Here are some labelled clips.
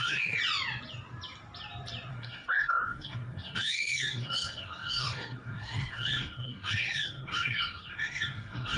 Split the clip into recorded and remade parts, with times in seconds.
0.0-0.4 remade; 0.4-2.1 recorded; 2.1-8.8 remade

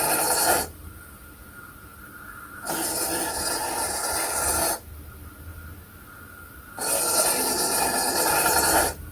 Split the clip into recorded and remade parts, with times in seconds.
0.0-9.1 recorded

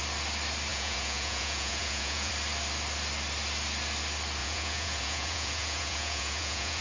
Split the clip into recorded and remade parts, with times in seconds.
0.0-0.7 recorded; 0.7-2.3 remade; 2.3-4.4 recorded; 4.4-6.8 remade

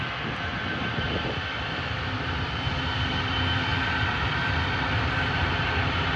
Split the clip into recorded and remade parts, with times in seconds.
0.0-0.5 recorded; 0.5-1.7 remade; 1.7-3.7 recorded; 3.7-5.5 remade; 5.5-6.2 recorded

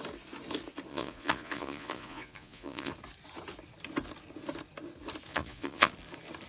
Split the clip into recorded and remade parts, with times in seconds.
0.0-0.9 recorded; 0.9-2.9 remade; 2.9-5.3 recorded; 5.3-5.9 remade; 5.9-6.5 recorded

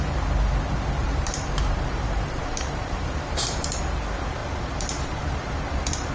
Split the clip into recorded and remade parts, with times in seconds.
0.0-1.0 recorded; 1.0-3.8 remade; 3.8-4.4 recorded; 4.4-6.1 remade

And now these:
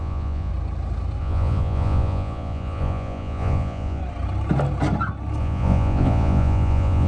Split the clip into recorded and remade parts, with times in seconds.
0.0-0.5 remade; 0.5-1.2 recorded; 1.2-4.0 remade; 4.0-5.4 recorded; 5.4-7.1 remade